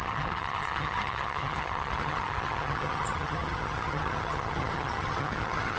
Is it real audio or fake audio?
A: fake